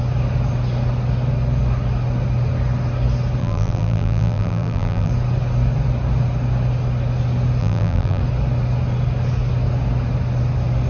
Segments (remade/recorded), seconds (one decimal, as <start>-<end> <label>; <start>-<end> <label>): 0.0-3.4 recorded; 3.4-5.1 remade; 5.1-7.6 recorded; 7.6-8.2 remade; 8.2-10.9 recorded